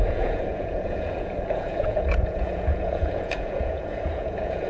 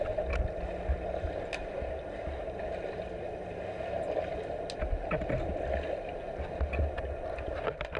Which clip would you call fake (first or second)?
first